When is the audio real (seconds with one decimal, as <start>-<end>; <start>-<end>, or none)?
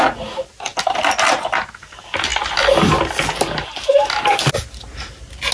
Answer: 0.0-5.5